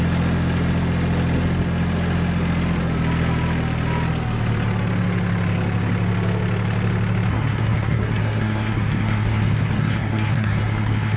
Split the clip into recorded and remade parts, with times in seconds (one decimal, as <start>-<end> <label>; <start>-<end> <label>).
0.0-7.3 recorded; 7.3-11.2 remade